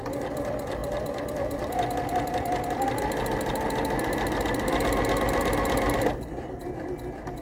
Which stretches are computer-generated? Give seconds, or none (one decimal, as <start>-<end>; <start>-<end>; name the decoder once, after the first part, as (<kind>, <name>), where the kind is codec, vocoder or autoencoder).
none